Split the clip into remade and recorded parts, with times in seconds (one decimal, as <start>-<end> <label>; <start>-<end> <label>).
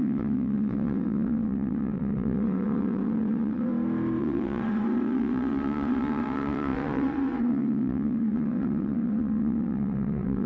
0.0-3.7 remade; 3.7-4.2 recorded; 4.2-10.5 remade